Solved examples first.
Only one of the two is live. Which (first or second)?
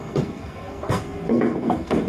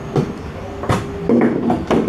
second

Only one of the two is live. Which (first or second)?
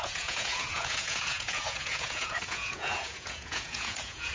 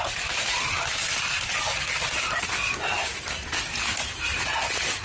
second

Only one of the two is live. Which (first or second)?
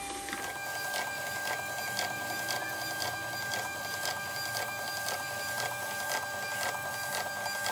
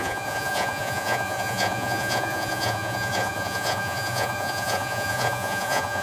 first